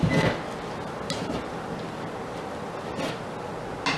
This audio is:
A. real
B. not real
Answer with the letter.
A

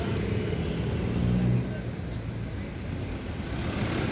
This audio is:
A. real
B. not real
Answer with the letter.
A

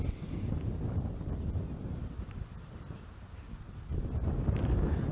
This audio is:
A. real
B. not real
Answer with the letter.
A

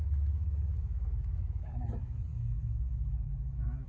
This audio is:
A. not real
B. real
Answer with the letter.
A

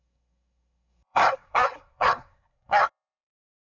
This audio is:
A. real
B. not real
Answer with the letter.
B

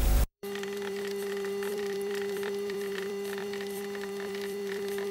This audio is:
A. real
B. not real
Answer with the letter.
B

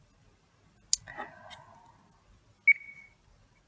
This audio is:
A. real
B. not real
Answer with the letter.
A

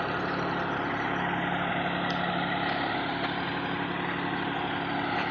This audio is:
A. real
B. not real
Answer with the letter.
A